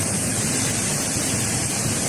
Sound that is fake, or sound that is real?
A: fake